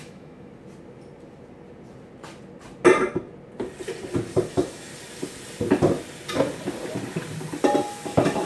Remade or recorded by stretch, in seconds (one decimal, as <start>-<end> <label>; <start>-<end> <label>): 0.0-0.5 remade; 0.5-4.5 recorded; 4.5-4.9 remade; 4.9-7.8 recorded; 7.8-8.5 remade